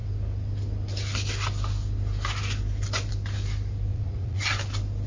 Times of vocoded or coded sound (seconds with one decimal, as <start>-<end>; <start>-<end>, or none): 3.9-4.4